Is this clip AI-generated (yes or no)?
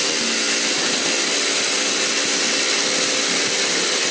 no